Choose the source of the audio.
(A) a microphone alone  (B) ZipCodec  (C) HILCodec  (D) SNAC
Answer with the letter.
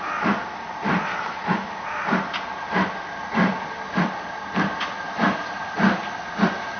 A